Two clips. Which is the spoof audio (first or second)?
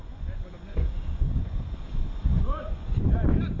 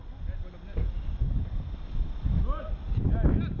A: first